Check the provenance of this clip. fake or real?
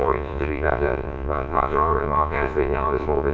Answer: fake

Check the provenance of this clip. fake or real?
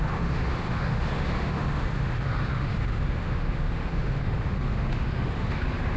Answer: fake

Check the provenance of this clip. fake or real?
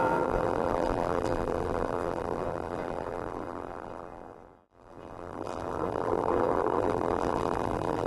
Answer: fake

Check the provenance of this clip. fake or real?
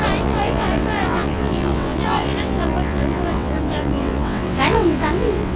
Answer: fake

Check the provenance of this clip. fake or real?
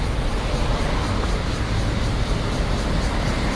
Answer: real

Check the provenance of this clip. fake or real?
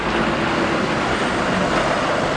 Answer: real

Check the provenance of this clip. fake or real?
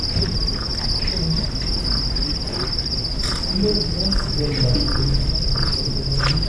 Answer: real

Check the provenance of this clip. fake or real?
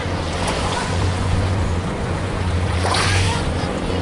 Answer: fake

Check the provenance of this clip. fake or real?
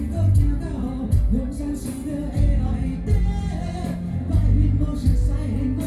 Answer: real